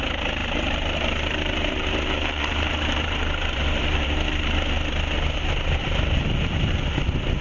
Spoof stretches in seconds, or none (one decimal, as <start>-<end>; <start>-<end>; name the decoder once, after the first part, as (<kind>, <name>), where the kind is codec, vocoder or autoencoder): 0.4-4.4 (vocoder, BigVGAN v2); 5.8-7.0